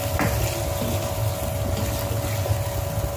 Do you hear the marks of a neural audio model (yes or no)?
no